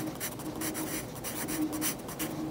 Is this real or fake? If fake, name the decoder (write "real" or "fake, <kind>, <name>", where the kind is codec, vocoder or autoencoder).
real